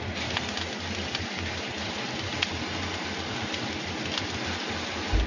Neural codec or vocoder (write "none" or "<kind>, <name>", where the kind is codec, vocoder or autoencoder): none